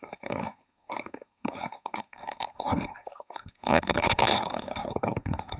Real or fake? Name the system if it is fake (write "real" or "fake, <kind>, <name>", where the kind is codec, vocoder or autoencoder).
fake, codec, SNAC